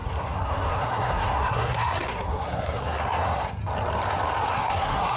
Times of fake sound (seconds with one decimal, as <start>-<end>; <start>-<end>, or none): 0.0-3.6; 4.5-5.2